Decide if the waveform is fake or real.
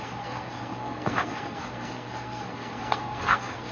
fake